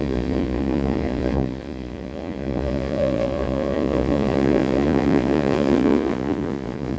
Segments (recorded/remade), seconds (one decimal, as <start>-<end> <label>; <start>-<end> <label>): 0.0-7.0 remade